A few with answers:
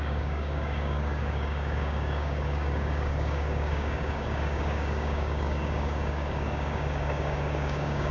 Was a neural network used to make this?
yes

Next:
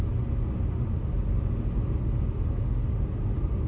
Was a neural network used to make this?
no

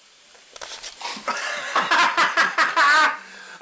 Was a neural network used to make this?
no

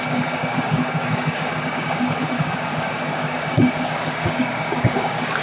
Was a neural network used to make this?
yes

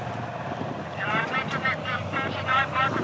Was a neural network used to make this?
no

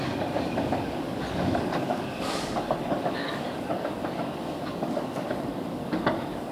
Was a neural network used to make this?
yes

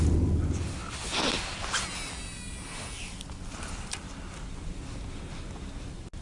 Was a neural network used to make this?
no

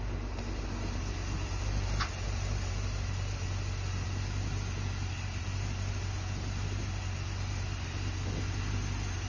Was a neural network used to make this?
no